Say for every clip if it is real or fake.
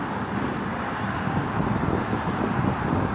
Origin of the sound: real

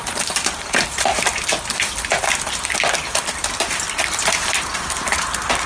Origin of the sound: real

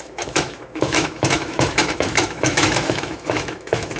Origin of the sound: fake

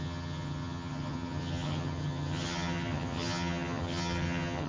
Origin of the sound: fake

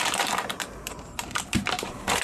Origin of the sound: fake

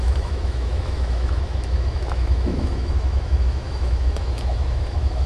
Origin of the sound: fake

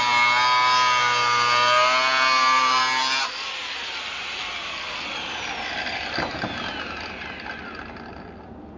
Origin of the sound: real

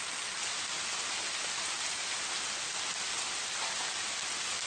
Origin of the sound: real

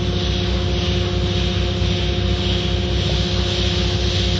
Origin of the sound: real